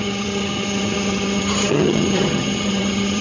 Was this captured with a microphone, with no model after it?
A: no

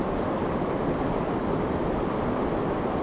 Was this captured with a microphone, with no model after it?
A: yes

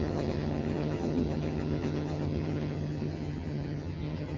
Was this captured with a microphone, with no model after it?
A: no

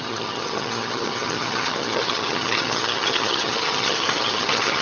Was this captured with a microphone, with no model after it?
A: no